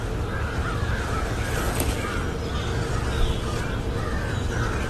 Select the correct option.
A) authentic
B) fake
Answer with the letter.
A